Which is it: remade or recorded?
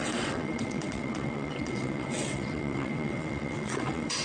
remade